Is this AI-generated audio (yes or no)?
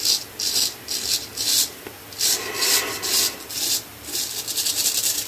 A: no